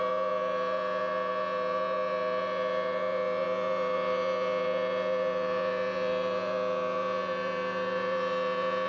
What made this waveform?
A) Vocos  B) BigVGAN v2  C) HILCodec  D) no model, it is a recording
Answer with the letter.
A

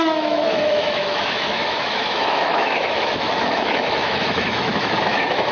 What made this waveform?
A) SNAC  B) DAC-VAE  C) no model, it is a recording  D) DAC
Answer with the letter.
B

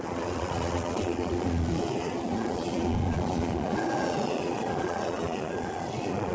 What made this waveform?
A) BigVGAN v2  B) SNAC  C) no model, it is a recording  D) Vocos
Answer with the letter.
D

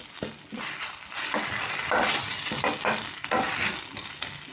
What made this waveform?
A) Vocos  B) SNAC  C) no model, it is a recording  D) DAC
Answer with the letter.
C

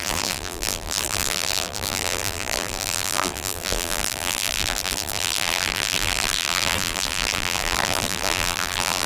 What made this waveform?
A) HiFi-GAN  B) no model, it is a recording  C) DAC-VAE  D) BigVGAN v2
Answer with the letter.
D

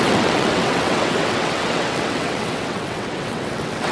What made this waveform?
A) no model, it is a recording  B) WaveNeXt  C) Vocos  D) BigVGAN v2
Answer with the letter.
B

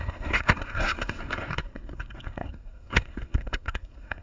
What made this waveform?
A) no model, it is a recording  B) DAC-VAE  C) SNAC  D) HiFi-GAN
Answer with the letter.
C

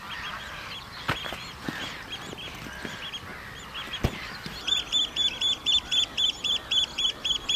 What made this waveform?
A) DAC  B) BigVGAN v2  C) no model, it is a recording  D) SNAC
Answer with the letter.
C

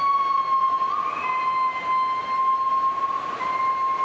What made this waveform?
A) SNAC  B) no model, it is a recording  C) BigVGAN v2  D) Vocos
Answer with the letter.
B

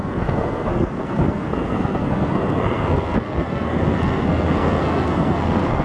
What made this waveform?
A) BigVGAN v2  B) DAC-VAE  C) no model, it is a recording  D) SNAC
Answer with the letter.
D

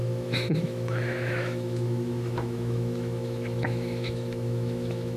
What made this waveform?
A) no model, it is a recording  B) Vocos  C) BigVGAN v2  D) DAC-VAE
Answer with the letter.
D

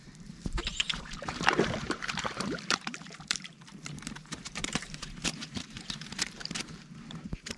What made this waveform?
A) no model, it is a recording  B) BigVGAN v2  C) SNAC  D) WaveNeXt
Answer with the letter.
B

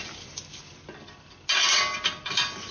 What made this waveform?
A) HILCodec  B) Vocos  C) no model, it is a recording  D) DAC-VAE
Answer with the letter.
C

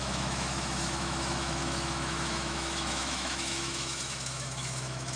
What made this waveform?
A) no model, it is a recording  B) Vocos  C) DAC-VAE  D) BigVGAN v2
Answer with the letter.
C